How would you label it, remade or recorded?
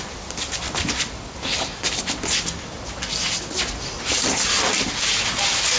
recorded